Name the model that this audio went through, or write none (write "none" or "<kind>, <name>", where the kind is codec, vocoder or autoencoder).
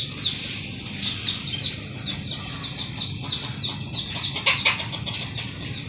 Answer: none